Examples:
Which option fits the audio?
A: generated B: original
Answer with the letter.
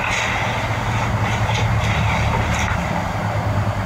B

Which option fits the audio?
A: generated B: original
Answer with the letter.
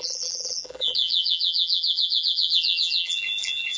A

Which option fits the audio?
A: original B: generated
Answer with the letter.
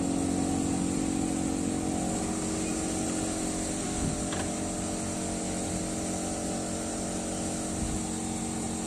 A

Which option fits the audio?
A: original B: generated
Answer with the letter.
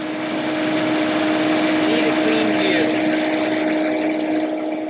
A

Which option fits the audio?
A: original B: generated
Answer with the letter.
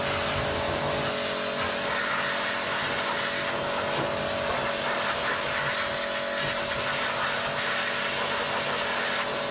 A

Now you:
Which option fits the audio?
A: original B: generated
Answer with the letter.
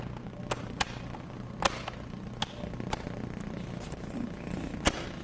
A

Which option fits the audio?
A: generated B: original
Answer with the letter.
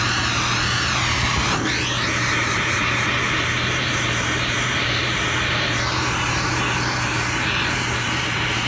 A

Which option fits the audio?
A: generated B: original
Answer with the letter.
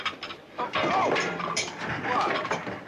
A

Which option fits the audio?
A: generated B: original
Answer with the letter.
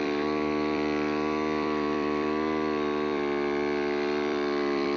A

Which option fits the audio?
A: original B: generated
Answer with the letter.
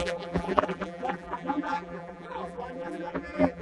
B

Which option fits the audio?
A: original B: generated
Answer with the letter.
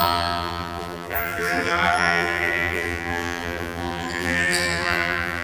B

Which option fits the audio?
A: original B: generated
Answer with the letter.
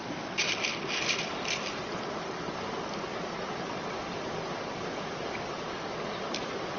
B